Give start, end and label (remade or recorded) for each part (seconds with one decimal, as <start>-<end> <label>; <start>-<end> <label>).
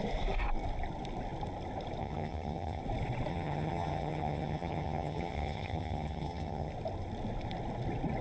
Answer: 0.0-2.0 recorded; 2.0-2.8 remade; 2.8-3.3 recorded; 3.3-6.7 remade; 6.7-8.2 recorded